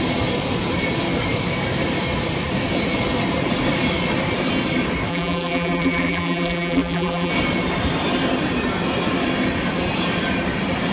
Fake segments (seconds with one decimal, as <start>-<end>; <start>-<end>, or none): 5.1-7.3